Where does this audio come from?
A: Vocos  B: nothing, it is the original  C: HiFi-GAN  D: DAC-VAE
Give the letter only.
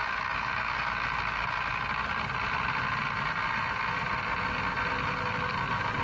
B